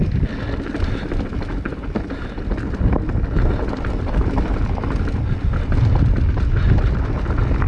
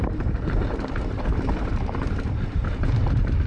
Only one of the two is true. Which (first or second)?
first